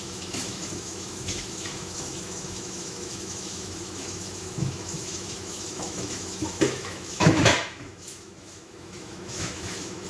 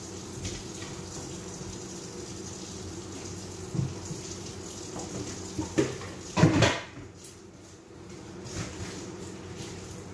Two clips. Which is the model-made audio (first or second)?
first